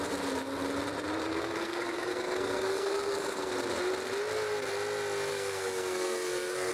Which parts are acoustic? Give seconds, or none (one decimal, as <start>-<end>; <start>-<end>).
0.0-1.2; 3.5-5.3